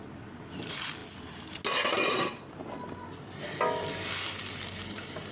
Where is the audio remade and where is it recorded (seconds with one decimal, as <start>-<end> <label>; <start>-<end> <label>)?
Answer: 0.0-5.3 recorded

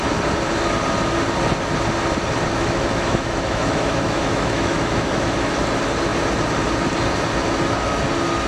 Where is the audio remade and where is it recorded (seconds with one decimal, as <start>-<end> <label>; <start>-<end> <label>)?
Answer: 0.0-2.5 recorded; 2.5-5.5 remade; 5.5-8.5 recorded

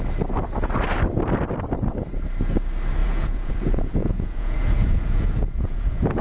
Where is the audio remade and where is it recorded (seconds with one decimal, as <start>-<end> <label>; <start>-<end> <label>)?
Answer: 0.0-3.0 recorded; 3.0-6.2 remade

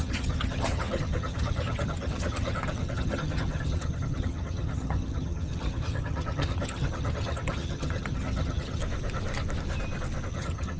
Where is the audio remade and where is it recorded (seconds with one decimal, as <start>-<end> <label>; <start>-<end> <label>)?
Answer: 0.0-8.8 remade; 8.8-10.3 recorded; 10.3-10.8 remade

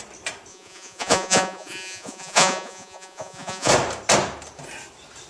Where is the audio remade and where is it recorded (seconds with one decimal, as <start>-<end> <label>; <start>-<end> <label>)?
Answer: 0.0-0.5 recorded; 0.5-3.7 remade; 3.7-5.3 recorded

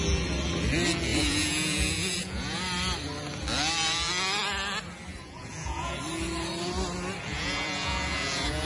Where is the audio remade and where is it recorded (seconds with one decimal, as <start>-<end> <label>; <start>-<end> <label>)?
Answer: 0.0-1.1 recorded; 1.1-2.6 remade; 2.6-5.1 recorded; 5.1-5.9 remade; 5.9-7.3 recorded; 7.3-8.7 remade

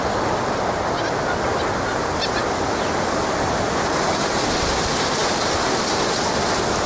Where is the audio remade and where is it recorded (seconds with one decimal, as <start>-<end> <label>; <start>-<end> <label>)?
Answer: 0.0-6.9 recorded